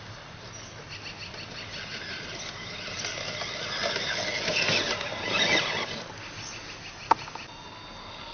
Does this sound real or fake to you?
real